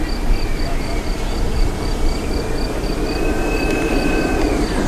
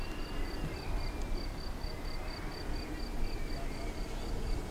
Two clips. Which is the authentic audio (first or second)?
second